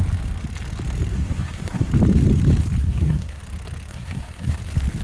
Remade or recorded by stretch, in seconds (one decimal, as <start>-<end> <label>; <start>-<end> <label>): 0.0-1.1 recorded; 1.1-1.9 remade; 1.9-2.8 recorded; 2.8-3.4 remade; 3.4-3.9 recorded; 3.9-4.6 remade; 4.6-5.0 recorded